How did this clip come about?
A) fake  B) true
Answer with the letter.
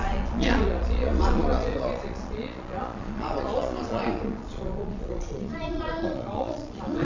A